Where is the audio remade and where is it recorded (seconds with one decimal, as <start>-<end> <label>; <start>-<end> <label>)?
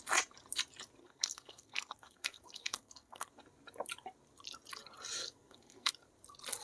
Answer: 0.0-1.0 recorded; 1.0-3.3 remade; 3.3-5.2 recorded; 5.2-5.9 remade; 5.9-6.6 recorded